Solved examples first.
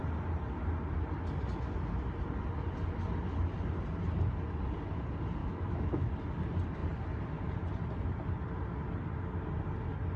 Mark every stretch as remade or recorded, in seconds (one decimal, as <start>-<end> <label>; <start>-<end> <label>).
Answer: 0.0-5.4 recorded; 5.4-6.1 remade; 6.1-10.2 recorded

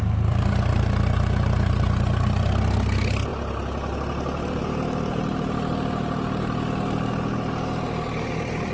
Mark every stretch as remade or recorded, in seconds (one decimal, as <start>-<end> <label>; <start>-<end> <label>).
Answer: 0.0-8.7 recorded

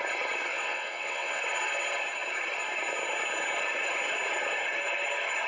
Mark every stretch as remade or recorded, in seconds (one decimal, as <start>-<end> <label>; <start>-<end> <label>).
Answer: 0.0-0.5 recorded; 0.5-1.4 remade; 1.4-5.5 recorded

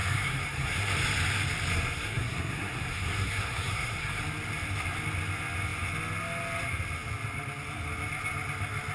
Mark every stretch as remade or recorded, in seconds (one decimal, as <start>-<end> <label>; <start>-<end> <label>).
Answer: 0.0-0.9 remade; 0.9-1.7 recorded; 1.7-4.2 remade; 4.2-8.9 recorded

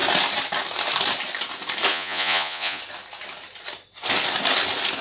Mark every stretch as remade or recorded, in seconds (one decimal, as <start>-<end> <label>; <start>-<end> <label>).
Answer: 0.0-1.9 recorded; 1.9-2.8 remade; 2.8-5.0 recorded

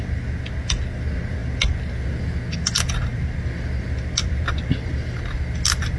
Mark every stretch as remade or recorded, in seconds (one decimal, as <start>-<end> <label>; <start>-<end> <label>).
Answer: 0.0-6.0 recorded

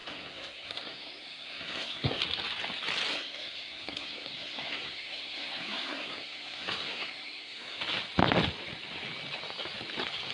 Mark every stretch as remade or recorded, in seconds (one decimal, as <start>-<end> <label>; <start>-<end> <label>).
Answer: 0.0-2.2 remade; 2.2-3.1 recorded; 3.1-7.8 remade; 7.8-10.3 recorded